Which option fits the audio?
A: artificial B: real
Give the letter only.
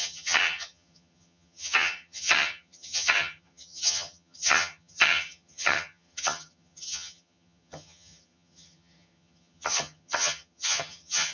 A